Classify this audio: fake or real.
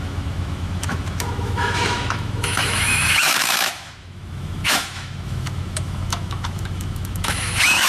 fake